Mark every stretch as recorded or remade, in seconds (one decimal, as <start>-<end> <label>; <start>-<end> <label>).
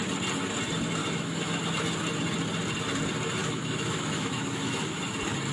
0.0-1.0 recorded; 1.0-1.6 remade; 1.6-3.4 recorded; 3.4-5.1 remade; 5.1-5.5 recorded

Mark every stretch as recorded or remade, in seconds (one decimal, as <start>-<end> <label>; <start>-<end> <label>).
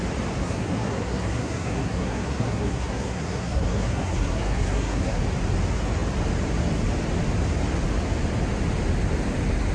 0.0-0.4 recorded; 0.4-5.2 remade; 5.2-9.7 recorded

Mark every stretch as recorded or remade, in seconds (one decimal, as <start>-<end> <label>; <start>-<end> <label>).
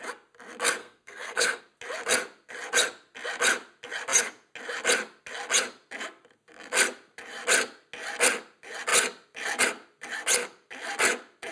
0.0-0.8 recorded; 0.8-1.6 remade; 1.6-11.5 recorded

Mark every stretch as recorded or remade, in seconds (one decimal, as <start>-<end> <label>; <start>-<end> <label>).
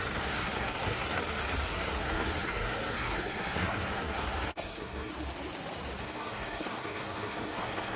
0.0-1.2 remade; 1.2-1.7 recorded; 1.7-5.1 remade; 5.1-6.0 recorded; 6.0-8.0 remade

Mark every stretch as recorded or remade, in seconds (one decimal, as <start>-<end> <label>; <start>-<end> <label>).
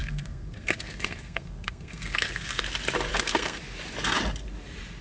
0.0-2.6 remade; 2.6-3.1 recorded; 3.1-3.6 remade; 3.6-5.0 recorded